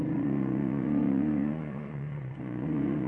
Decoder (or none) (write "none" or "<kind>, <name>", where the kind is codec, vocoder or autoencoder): vocoder, Vocos